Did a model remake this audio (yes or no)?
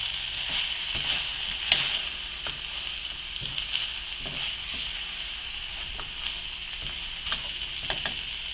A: no